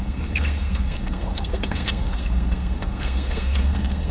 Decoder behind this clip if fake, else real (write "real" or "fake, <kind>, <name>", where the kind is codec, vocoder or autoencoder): fake, codec, SNAC